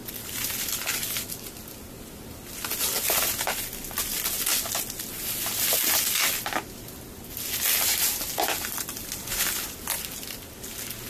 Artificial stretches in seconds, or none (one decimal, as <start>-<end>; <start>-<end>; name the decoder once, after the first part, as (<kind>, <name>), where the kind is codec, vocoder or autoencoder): none